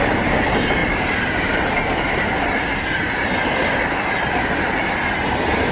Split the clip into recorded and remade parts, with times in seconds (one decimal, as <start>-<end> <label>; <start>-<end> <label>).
0.0-5.7 recorded